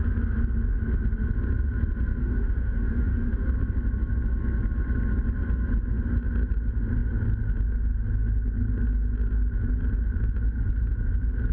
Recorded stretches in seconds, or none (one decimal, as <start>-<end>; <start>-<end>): 0.0-2.2; 3.5-11.5